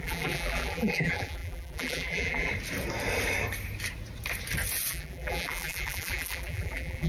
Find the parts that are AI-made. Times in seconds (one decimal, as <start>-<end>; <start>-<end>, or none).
0.0-2.5; 4.9-7.1